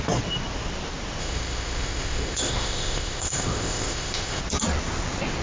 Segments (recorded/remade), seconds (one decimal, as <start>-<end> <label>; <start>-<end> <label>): 0.0-1.2 recorded; 1.2-4.4 remade; 4.4-5.4 recorded